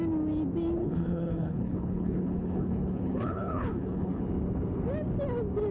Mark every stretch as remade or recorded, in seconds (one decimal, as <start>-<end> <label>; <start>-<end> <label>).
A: 0.0-0.8 recorded; 0.8-4.2 remade; 4.2-5.7 recorded